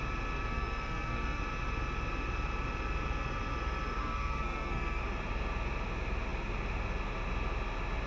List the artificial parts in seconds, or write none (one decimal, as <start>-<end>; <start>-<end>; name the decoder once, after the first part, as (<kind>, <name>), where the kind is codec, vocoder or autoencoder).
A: 0.5-1.4 (codec, SNAC); 4.0-5.0